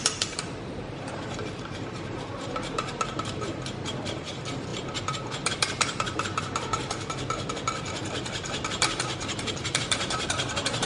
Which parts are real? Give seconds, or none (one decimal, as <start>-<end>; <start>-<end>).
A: none